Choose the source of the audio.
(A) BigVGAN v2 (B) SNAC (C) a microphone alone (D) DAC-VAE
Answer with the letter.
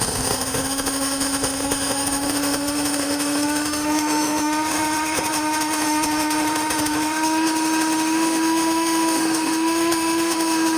D